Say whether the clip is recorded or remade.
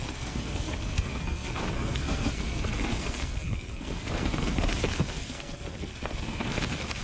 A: remade